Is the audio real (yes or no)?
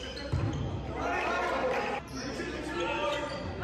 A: yes